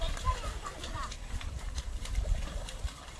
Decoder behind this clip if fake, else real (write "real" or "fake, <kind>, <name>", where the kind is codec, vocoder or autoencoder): fake, vocoder, BigVGAN v2